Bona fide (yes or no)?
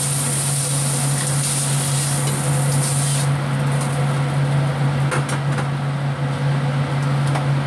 yes